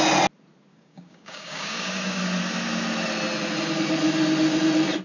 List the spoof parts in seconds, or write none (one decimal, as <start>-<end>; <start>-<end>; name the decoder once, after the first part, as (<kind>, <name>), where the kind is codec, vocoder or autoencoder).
0.7-2.2 (codec, DAC)